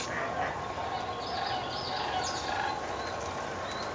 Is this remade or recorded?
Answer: recorded